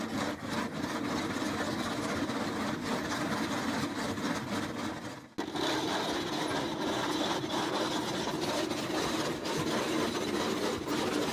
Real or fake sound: real